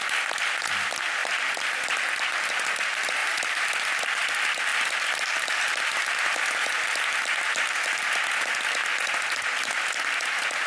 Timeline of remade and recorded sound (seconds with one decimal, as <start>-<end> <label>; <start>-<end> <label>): 0.0-1.2 recorded; 1.2-2.5 remade; 2.5-3.2 recorded; 3.2-4.3 remade; 4.3-4.7 recorded; 4.7-5.7 remade; 5.7-10.7 recorded